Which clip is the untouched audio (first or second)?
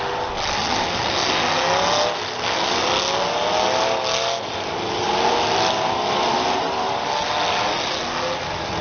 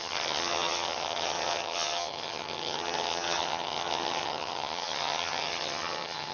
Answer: first